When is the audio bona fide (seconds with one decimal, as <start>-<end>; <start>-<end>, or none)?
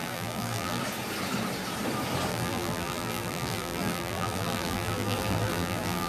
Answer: 0.8-2.3